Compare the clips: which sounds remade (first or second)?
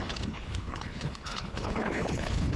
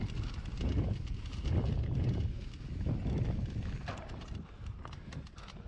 first